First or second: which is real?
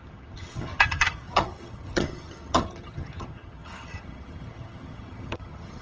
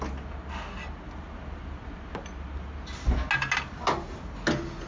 second